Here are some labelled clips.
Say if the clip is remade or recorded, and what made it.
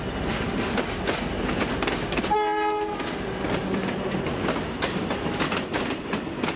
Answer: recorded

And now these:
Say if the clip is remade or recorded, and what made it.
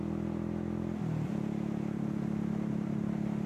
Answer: recorded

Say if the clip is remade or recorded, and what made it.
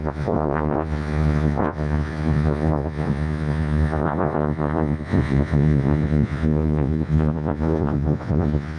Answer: remade, vocoder, Vocos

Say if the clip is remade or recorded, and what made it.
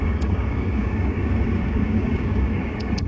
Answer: remade, codec, DAC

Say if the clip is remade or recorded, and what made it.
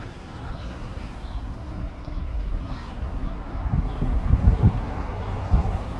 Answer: remade, codec, SNAC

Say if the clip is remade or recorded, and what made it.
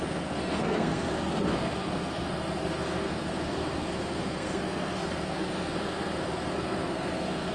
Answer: remade, codec, SNAC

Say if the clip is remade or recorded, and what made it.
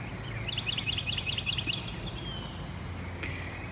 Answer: recorded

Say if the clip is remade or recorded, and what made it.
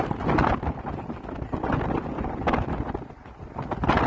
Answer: recorded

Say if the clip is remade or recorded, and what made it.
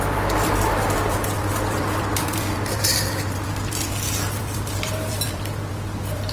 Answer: remade, vocoder, BigVGAN v2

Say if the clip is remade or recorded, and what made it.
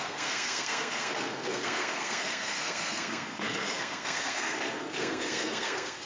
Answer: remade, codec, SNAC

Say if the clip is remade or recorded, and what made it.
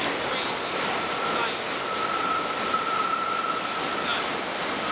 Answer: recorded